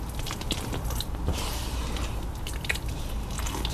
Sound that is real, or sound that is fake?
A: real